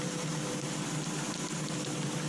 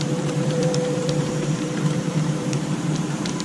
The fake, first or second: second